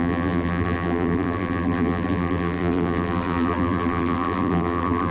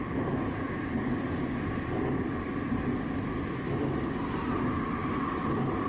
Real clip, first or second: second